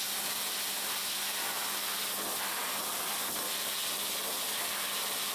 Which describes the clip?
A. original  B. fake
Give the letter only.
A